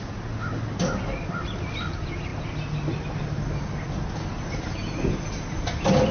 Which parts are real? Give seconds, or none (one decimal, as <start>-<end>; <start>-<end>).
0.0-6.1